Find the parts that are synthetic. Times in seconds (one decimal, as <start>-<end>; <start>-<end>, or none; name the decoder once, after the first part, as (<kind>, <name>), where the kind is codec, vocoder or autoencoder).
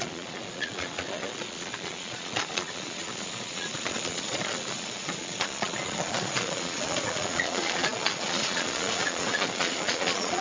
0.0-10.4 (vocoder, Vocos)